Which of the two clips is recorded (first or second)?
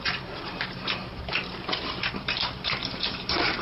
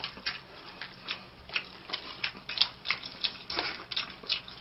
second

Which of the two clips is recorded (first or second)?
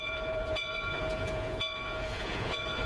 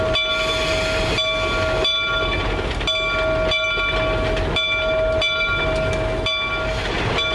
second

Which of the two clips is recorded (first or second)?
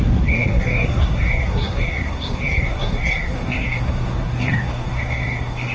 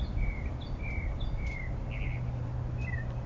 second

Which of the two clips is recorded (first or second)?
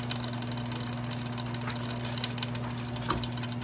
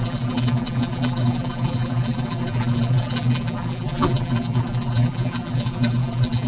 first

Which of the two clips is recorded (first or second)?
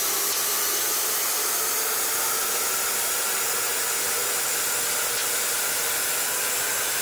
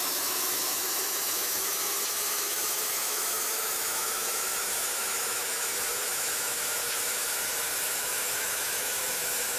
first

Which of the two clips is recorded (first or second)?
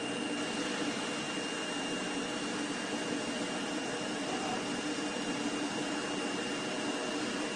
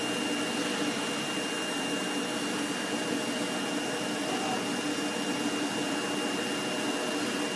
second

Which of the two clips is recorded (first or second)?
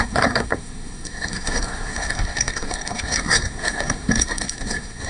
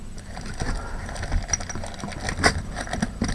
second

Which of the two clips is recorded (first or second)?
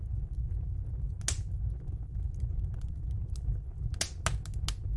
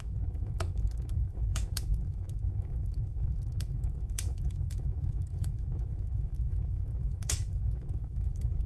first